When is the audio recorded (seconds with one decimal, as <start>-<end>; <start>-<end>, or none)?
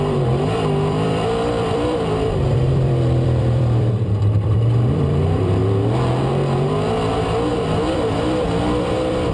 5.6-7.5